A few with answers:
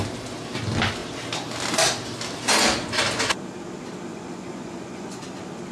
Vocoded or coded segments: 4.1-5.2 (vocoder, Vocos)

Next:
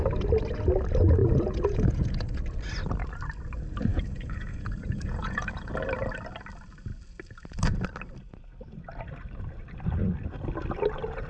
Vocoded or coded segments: 1.2-2.4 (vocoder, Vocos); 3.9-5.7

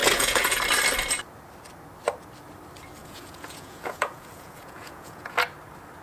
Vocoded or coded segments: 0.0-0.6 (vocoder, Vocos); 3.0-5.3

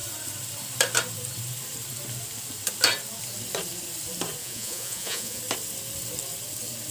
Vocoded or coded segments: 4.4-5.4 (vocoder, Vocos)

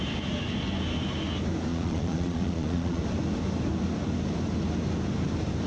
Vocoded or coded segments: 1.7-3.0 (vocoder, Vocos)